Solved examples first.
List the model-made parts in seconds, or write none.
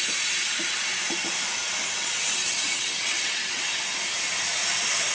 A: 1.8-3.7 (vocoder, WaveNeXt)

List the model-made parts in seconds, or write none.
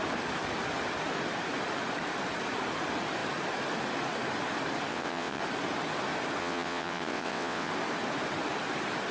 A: 4.9-5.4 (vocoder, WaveNeXt); 6.4-7.7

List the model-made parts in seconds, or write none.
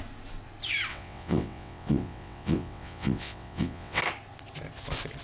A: 0.9-4.0 (vocoder, WaveNeXt)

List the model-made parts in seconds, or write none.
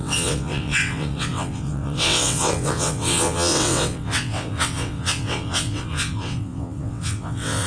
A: 0.0-7.7 (vocoder, WaveNeXt)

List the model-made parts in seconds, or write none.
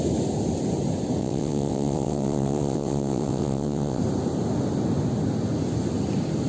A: 1.2-4.0 (vocoder, WaveNeXt)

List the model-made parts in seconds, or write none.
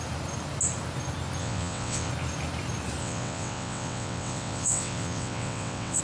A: 1.4-2.1 (vocoder, WaveNeXt); 3.0-6.0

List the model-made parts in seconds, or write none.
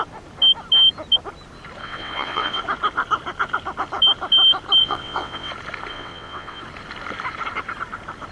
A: 1.8-2.6 (vocoder, WaveNeXt); 4.8-5.5; 5.9-6.6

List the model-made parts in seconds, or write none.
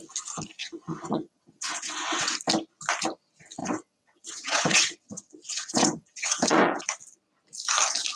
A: 0.6-2.3 (vocoder, WaveNeXt); 3.6-6.8